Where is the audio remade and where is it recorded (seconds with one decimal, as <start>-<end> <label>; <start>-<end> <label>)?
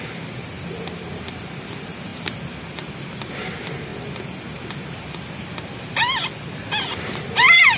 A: 0.0-7.8 recorded